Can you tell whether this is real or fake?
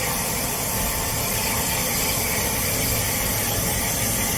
fake